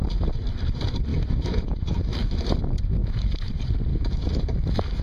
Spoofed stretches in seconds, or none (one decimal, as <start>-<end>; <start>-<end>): 1.1-2.5; 3.0-3.5; 3.9-5.0

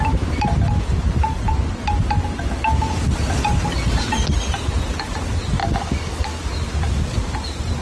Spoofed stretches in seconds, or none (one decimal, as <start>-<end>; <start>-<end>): 5.6-6.4

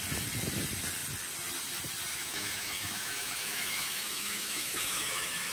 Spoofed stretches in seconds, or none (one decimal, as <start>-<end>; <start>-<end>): 2.1-5.5

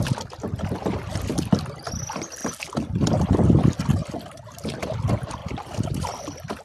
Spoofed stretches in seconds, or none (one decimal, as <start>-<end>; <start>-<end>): none